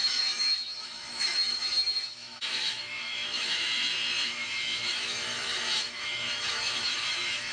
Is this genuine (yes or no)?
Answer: no